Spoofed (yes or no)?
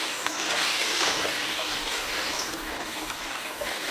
yes